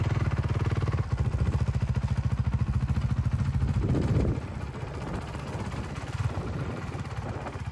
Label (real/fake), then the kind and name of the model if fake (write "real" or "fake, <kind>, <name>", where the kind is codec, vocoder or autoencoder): real